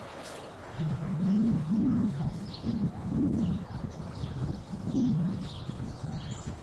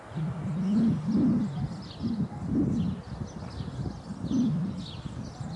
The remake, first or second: first